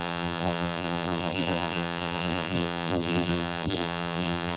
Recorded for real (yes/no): no